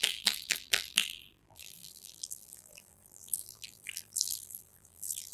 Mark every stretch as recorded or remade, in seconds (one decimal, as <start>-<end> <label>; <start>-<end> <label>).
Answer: 0.0-5.3 remade